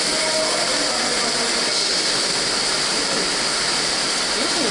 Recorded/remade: recorded